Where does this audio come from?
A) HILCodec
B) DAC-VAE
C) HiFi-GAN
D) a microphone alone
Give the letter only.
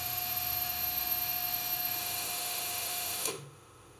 B